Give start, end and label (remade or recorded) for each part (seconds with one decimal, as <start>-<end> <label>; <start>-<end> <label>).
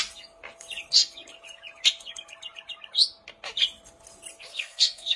0.0-4.5 recorded; 4.5-5.2 remade